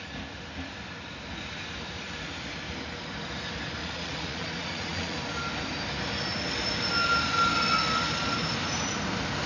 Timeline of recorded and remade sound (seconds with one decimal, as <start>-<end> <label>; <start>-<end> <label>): 0.0-3.8 recorded; 3.8-5.2 remade; 5.2-9.5 recorded